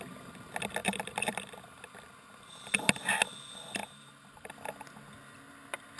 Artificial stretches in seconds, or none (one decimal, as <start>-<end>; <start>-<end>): 0.8-1.8; 3.8-4.5